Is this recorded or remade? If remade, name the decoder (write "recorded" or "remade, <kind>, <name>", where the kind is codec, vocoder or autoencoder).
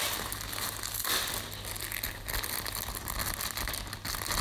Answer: recorded